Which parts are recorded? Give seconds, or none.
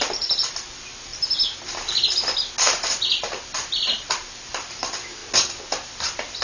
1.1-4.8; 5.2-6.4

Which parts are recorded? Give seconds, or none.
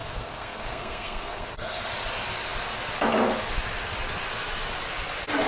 1.5-5.5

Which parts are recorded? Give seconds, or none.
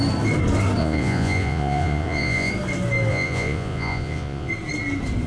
0.0-0.8; 2.5-3.1; 4.5-5.3